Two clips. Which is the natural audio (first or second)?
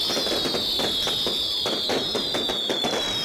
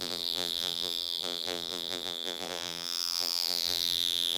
first